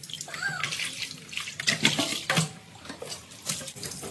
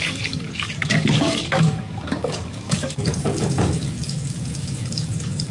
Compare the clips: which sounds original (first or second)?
first